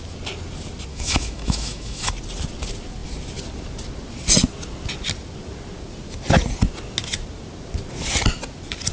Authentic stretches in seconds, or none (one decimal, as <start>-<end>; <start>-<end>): 0.0-0.9; 2.1-8.9